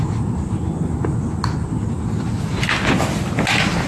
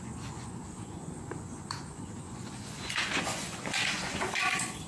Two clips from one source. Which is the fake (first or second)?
second